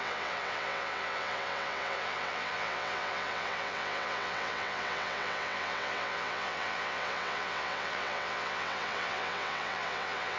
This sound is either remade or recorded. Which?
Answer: remade